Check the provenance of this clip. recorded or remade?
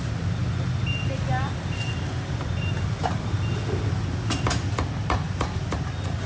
recorded